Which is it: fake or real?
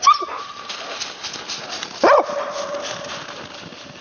real